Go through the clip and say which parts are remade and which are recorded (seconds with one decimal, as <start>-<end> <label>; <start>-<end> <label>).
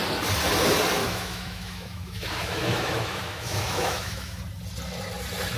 0.0-1.0 recorded; 1.0-4.4 remade; 4.4-5.6 recorded